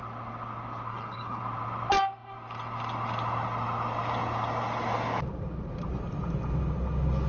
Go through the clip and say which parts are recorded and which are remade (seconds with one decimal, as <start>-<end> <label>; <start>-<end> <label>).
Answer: 0.0-0.9 recorded; 0.9-1.4 remade; 1.4-7.3 recorded